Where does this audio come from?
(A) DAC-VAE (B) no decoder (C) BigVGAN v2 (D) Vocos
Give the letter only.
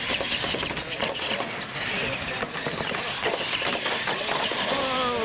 B